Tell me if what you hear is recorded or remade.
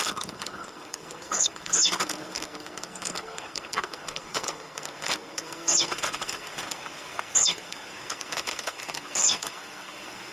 remade